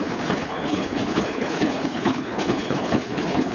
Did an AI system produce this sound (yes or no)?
yes